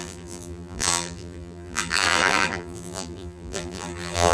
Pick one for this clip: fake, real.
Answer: fake